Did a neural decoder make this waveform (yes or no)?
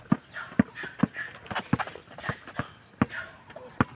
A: no